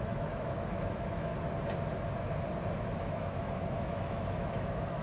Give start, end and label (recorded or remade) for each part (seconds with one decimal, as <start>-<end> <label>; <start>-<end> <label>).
0.0-1.3 remade; 1.3-2.8 recorded; 2.8-5.0 remade